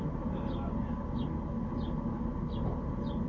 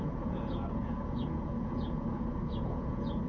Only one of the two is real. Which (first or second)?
first